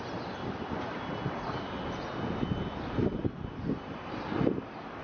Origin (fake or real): real